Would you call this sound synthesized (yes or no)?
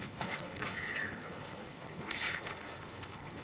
yes